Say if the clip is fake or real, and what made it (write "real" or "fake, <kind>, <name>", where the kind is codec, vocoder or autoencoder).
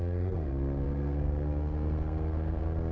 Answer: fake, codec, SNAC